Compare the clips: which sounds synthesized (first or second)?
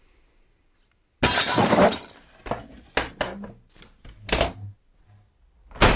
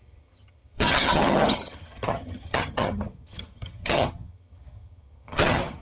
second